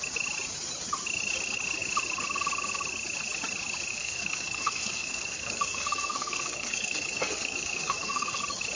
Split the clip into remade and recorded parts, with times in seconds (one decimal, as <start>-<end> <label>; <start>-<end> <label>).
0.0-3.9 recorded; 3.9-8.4 remade; 8.4-8.8 recorded